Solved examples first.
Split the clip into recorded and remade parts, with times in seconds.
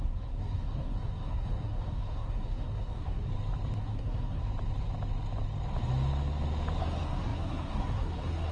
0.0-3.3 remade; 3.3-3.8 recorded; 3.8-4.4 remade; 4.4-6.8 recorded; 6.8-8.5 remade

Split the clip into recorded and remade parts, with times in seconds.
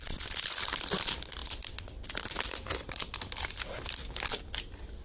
0.0-5.0 recorded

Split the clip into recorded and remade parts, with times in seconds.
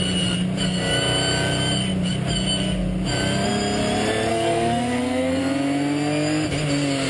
0.0-4.3 recorded; 4.3-5.4 remade; 5.4-7.1 recorded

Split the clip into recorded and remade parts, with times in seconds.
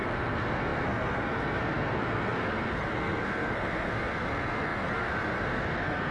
0.0-6.1 remade